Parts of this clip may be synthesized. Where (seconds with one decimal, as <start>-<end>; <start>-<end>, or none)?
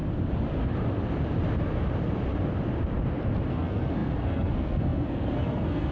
3.5-5.9